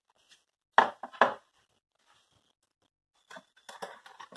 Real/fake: real